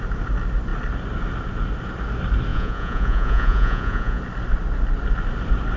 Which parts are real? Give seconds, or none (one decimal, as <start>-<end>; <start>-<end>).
0.0-2.5; 4.2-5.8